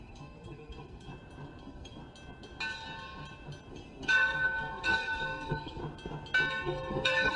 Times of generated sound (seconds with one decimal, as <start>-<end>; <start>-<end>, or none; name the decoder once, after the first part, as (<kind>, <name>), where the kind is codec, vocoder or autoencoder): 0.0-1.1 (codec, SNAC); 1.6-2.0; 3.7-5.8; 6.5-7.4